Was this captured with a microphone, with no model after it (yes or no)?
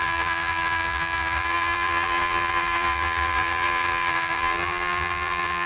no